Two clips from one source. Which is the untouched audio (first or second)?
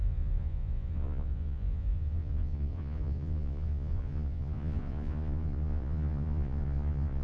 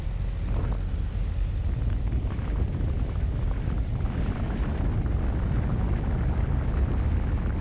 second